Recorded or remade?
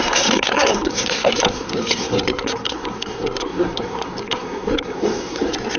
remade